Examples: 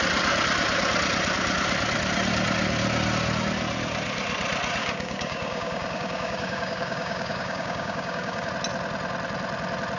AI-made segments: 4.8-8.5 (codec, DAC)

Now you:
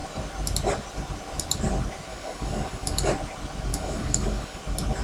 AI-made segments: 2.1-3.1 (codec, DAC); 3.7-4.6

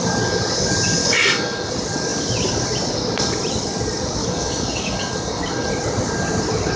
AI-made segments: 1.0-1.7 (codec, DAC); 4.2-5.7

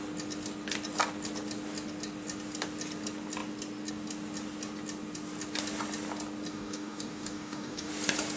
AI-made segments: 6.5-7.9 (codec, DAC)

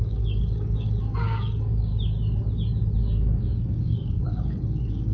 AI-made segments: 0.0-1.9 (codec, DAC); 3.0-5.1

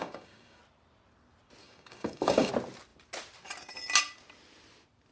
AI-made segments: 0.0-0.6 (codec, DAC); 1.6-2.5

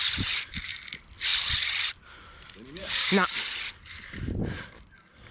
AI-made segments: 2.8-3.4 (codec, DAC)

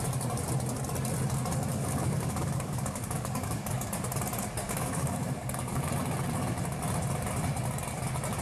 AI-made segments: 1.7-3.8 (codec, DAC); 4.6-5.9